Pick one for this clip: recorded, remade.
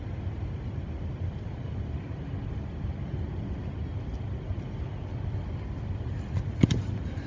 recorded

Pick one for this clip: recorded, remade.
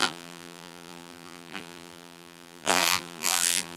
remade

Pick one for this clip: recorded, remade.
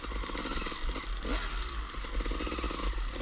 recorded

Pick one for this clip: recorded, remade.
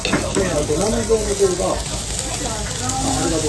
recorded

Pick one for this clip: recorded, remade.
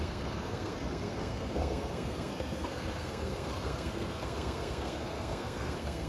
remade